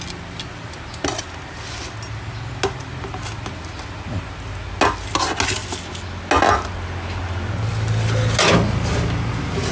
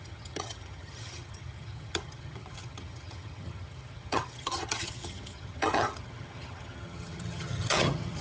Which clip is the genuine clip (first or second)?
first